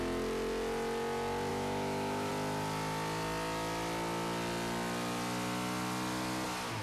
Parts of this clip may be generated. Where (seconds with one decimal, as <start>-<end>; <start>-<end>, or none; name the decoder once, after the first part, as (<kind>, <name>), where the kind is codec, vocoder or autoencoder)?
1.5-2.3 (autoencoder, DAC-VAE)